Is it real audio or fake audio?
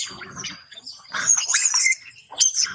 fake